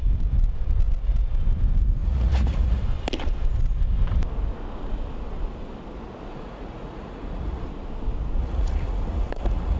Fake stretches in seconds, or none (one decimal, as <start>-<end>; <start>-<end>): 2.0-2.8; 6.3-7.6; 8.4-9.8